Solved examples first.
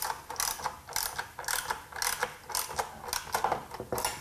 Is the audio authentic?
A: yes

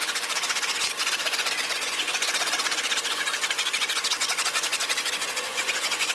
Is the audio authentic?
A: no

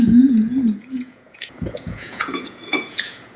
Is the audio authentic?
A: no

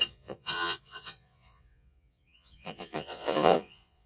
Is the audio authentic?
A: no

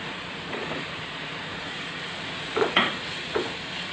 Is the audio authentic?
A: no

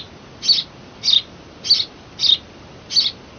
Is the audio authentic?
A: yes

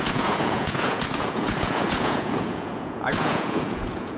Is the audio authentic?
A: no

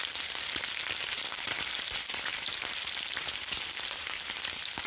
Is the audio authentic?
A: yes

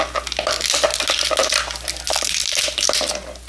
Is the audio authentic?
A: yes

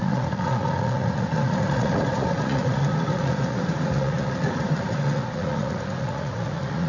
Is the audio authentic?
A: no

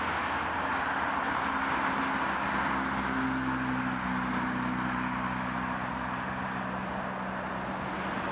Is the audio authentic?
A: yes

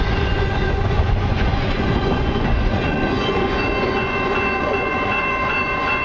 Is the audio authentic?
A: no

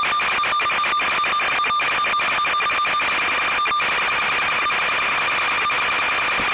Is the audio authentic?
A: yes